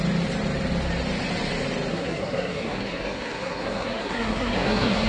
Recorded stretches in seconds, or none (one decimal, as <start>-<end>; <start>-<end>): 0.0-1.9